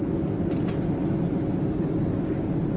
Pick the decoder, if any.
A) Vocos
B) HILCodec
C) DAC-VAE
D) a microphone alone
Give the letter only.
D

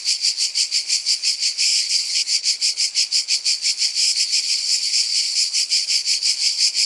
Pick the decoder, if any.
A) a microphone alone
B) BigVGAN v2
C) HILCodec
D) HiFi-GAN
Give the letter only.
C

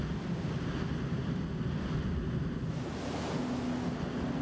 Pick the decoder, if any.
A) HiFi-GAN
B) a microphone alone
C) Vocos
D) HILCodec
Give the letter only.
B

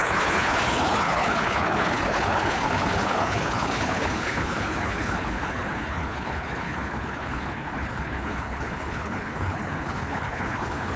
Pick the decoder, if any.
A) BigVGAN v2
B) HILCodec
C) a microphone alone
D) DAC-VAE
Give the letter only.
B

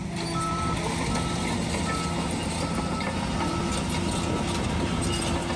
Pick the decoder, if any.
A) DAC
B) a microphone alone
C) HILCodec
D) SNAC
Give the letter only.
B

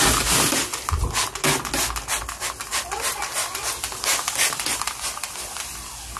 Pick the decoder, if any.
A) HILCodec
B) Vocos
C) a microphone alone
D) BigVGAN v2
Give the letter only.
C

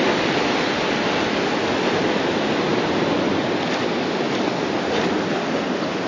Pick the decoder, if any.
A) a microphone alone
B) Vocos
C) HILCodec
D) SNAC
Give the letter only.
A